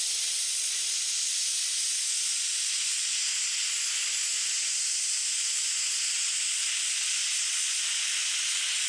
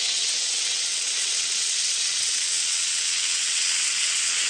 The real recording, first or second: first